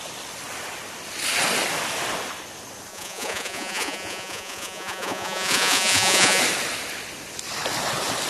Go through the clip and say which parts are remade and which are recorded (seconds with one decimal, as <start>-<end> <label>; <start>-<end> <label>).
0.0-2.9 recorded; 2.9-6.4 remade; 6.4-8.3 recorded